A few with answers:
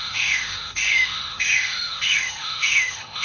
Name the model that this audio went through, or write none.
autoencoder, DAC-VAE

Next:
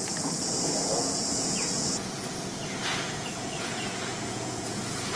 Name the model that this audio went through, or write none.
vocoder, Vocos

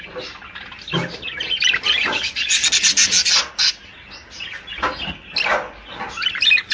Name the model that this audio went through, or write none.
none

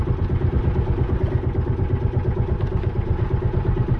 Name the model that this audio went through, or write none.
none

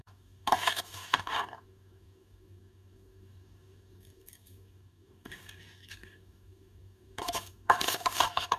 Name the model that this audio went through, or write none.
codec, DAC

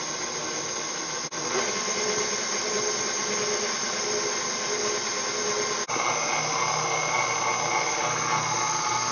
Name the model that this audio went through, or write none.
none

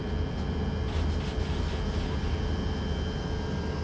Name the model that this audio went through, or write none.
none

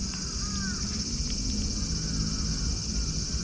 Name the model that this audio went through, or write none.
none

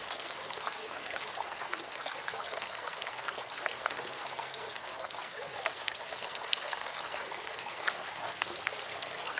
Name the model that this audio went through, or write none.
codec, SNAC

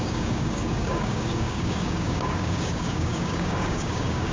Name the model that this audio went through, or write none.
codec, DAC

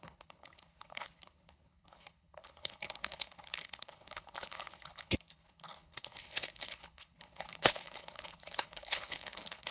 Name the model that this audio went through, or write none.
codec, HILCodec